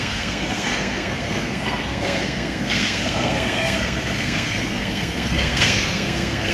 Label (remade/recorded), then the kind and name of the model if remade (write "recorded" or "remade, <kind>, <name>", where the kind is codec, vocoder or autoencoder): remade, codec, SNAC